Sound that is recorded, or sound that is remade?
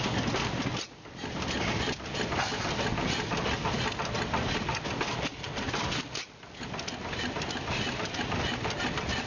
recorded